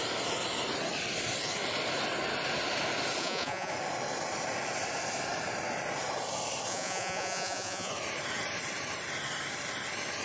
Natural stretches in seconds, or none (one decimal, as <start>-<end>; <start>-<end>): 0.0-3.2; 3.7-6.7; 7.9-10.2